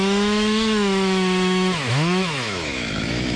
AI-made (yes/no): yes